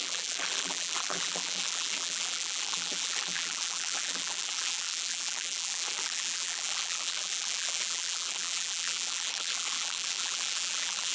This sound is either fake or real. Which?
fake